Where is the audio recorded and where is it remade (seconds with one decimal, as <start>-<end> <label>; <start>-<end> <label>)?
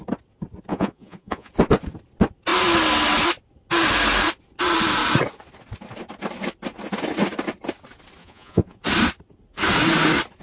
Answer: 0.0-0.7 recorded; 0.7-1.5 remade; 1.5-8.2 recorded; 8.2-8.8 remade; 8.8-10.4 recorded